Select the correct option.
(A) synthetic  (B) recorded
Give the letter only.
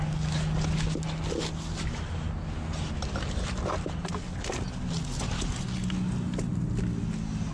B